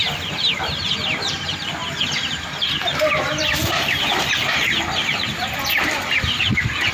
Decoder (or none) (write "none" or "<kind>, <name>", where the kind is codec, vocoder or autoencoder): vocoder, BigVGAN v2